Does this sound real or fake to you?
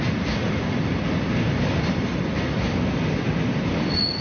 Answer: real